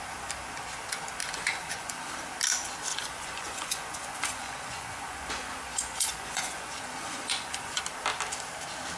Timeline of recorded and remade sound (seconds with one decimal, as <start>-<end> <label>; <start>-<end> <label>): 0.0-1.2 recorded; 1.2-2.1 remade; 2.1-2.9 recorded; 2.9-7.8 remade; 7.8-9.0 recorded

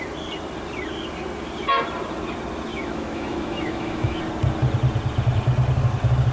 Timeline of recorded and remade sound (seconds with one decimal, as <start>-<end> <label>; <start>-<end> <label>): 0.0-2.7 recorded; 2.7-4.2 remade; 4.2-6.3 recorded

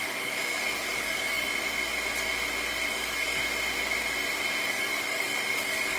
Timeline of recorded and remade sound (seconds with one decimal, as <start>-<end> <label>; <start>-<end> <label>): 0.0-1.5 remade; 1.5-2.9 recorded; 2.9-3.4 remade; 3.4-4.6 recorded; 4.6-6.0 remade

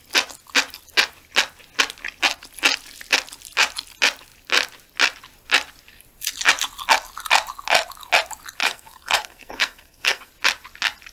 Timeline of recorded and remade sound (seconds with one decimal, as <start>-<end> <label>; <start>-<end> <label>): 0.0-8.6 recorded; 8.6-10.3 remade; 10.3-11.1 recorded

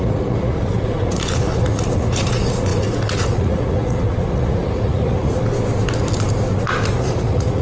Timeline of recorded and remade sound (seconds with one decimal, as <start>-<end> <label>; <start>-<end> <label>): 0.0-5.4 remade; 5.4-6.9 recorded; 6.9-7.6 remade